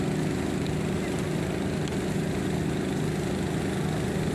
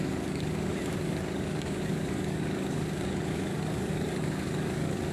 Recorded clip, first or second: first